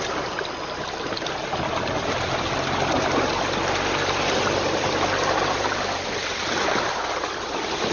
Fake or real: real